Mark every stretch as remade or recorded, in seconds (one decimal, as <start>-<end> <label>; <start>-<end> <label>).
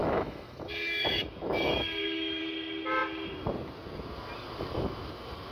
0.0-2.4 remade; 2.4-5.5 recorded